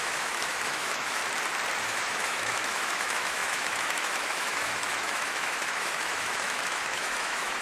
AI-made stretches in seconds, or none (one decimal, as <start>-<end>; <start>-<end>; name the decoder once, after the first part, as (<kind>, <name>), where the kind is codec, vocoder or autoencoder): 0.0-1.2 (autoencoder, DAC-VAE); 1.8-7.6